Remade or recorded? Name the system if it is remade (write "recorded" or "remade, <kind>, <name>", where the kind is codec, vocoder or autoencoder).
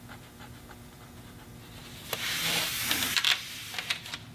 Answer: recorded